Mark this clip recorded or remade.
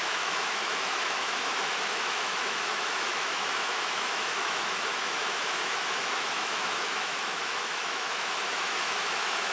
remade